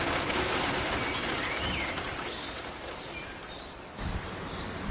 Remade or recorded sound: recorded